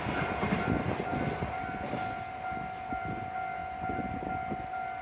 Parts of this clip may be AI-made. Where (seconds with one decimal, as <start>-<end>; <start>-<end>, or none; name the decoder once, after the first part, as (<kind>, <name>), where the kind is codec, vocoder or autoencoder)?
none